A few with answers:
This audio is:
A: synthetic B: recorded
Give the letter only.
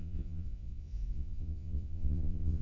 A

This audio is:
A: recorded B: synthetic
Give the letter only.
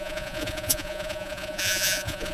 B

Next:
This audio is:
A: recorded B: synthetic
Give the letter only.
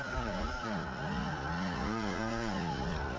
B